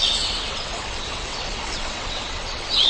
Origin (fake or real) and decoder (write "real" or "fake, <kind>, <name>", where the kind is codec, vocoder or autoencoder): fake, vocoder, WaveNeXt